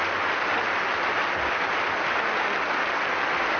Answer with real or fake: real